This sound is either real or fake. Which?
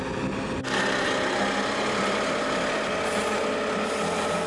real